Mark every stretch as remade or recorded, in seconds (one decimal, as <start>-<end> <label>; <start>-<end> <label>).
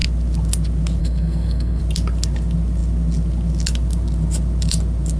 0.0-1.0 recorded; 1.0-1.8 remade; 1.8-5.2 recorded